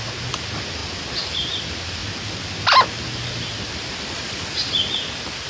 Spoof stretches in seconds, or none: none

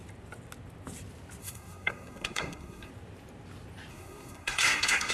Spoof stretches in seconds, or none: 1.4-2.9 (codec, SNAC); 3.9-5.1

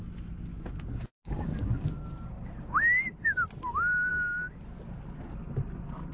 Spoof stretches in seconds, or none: 0.5-1.9 (codec, DAC)

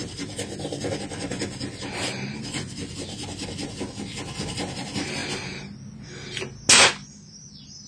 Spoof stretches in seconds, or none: none

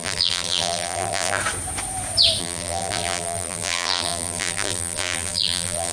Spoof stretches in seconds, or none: 0.0-1.4 (vocoder, BigVGAN v2); 2.4-5.9

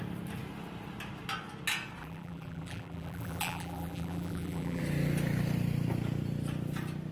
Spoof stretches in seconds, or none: 2.0-4.8 (vocoder, BigVGAN v2)

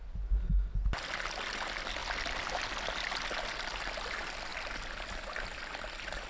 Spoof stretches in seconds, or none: none